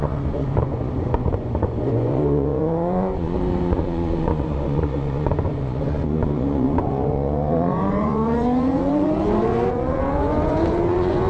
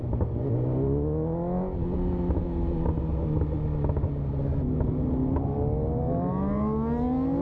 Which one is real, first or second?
second